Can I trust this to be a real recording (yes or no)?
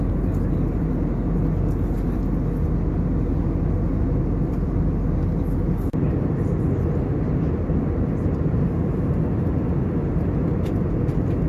yes